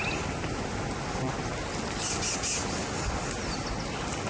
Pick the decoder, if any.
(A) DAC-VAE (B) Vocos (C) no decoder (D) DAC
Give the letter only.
C